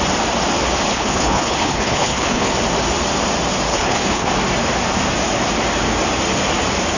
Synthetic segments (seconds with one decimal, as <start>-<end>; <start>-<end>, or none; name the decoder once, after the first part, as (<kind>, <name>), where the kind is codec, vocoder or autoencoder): 0.9-2.5 (codec, HILCodec); 3.7-4.3